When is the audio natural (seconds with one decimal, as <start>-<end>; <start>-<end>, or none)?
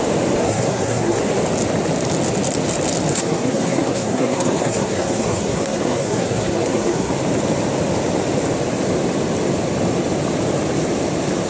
0.0-0.4; 1.2-3.1; 7.1-11.5